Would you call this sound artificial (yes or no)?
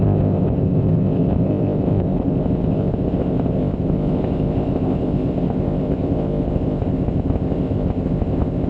yes